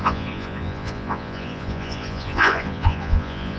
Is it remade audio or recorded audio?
remade